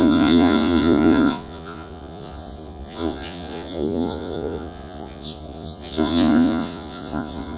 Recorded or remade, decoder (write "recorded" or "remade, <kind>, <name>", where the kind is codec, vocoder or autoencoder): remade, vocoder, Vocos